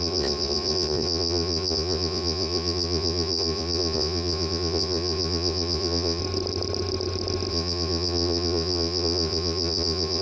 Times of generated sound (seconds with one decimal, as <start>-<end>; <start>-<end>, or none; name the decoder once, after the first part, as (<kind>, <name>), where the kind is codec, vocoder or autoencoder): 0.0-6.2 (vocoder, Vocos); 7.5-10.2